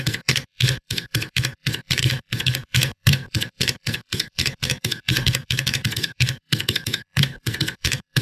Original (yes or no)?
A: no